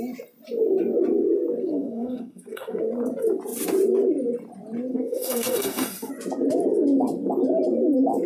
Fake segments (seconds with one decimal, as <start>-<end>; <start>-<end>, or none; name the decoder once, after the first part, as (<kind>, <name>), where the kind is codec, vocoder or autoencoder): 1.6-2.8 (codec, SNAC); 4.9-6.1